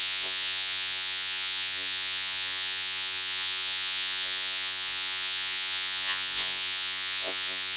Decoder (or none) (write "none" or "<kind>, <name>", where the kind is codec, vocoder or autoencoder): vocoder, Vocos